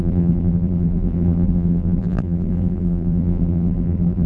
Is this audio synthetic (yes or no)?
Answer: yes